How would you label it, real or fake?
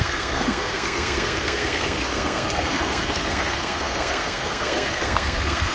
fake